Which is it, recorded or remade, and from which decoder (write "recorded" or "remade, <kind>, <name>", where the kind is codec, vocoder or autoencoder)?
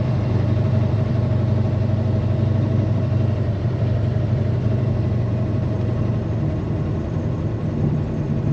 remade, vocoder, BigVGAN v2